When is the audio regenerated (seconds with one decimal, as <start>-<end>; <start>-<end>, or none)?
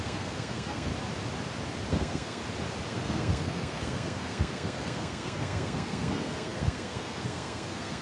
0.0-0.9; 1.9-2.4; 2.9-8.0